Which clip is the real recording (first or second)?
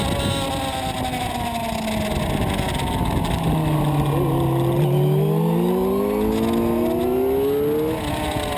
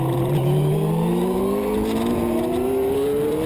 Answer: first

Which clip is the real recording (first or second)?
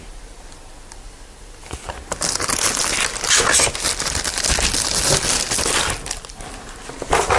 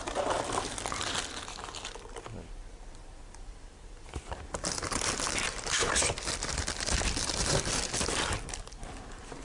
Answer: first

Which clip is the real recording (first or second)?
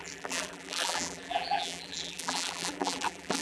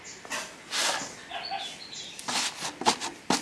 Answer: second